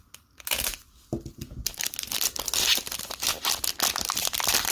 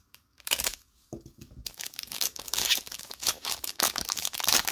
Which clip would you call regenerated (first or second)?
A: second